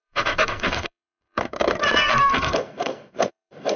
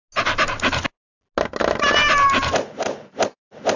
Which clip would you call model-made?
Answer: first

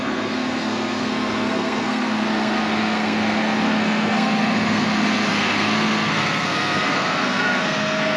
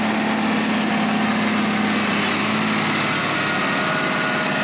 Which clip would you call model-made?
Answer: first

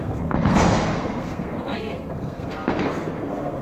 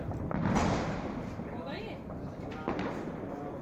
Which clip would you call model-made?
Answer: first